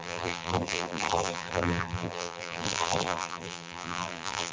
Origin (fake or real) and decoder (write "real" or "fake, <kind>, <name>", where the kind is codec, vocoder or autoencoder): fake, vocoder, BigVGAN v2